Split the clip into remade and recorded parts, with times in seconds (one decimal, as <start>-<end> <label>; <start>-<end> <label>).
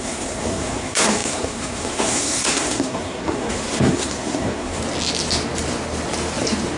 0.0-4.8 remade; 4.8-6.8 recorded